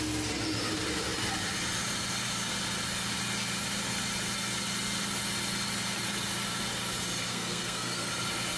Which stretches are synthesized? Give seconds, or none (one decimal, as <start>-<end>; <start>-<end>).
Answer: 7.3-8.1